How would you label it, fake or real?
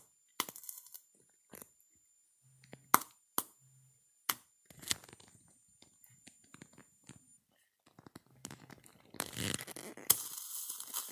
real